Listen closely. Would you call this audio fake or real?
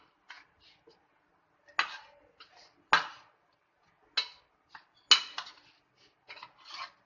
real